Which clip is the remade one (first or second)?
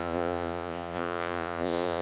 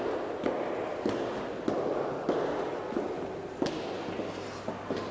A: first